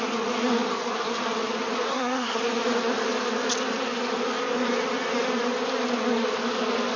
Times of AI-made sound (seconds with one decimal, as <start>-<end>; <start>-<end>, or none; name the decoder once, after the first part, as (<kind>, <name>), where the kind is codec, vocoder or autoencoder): 1.9-2.4 (codec, SNAC)